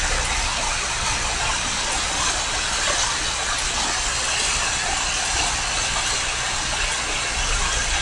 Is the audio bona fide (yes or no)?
yes